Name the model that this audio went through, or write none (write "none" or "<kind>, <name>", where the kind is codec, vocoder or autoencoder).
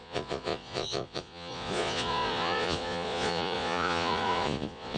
vocoder, Vocos